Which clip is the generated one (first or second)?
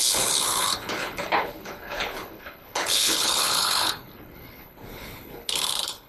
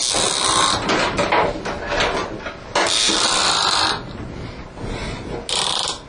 first